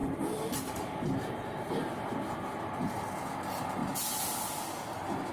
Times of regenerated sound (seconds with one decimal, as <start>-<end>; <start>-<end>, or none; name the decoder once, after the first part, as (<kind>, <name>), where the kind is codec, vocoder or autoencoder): none